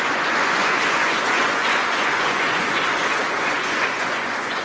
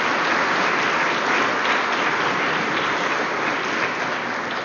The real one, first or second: second